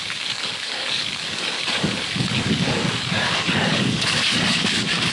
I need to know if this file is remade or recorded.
remade